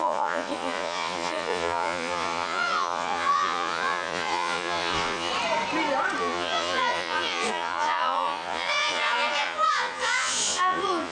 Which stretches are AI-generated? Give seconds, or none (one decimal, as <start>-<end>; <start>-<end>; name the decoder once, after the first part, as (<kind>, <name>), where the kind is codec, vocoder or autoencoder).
0.0-5.3 (vocoder, Vocos); 6.2-11.1